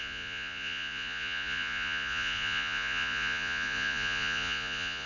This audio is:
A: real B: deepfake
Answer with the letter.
B